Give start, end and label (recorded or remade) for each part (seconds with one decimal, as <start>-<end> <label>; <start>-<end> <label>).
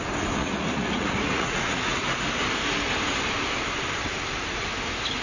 0.0-0.4 recorded; 0.4-1.9 remade; 1.9-5.2 recorded